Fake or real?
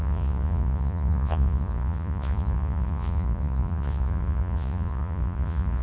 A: fake